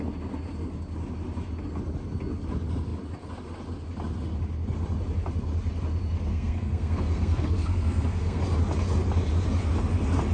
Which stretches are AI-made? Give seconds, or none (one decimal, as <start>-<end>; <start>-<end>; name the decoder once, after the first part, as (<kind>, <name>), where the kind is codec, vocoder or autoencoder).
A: 6.3-8.4 (codec, SNAC)